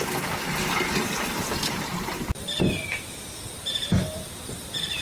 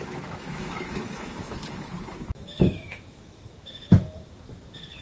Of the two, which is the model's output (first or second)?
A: second